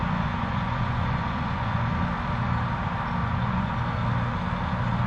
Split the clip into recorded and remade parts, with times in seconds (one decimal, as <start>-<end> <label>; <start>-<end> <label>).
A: 0.0-1.9 remade; 1.9-3.2 recorded; 3.2-3.7 remade; 3.7-5.1 recorded